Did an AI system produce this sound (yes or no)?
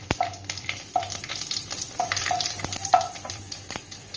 yes